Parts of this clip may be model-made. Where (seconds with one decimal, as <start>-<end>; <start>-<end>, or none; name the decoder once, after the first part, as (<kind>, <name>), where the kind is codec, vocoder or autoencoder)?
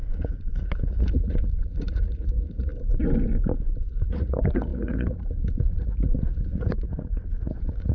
0.0-2.7 (vocoder, Vocos); 4.1-7.9